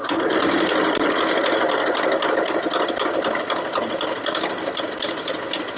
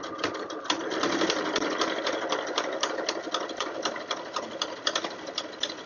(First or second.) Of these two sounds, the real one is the first